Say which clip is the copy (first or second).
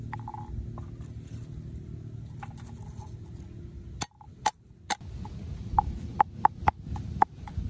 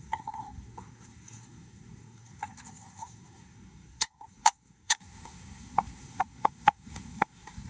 second